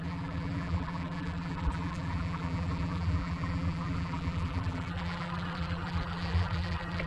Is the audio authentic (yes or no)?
no